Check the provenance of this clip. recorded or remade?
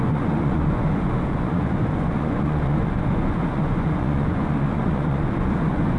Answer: remade